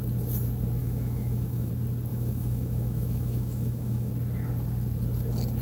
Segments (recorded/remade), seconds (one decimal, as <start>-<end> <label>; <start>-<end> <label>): 0.0-0.8 recorded; 0.8-1.7 remade; 1.7-2.1 recorded; 2.1-4.1 remade; 4.1-5.6 recorded